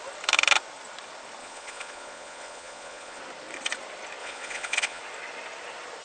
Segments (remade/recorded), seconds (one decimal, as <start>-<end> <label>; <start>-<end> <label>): 0.0-1.4 recorded; 1.4-3.2 remade; 3.2-4.2 recorded; 4.2-5.0 remade; 5.0-6.0 recorded